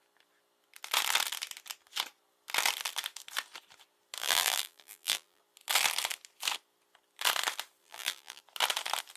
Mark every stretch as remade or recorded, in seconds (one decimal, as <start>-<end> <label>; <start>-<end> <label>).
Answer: 0.0-4.2 recorded; 4.2-5.4 remade; 5.4-7.8 recorded; 7.8-8.4 remade; 8.4-9.2 recorded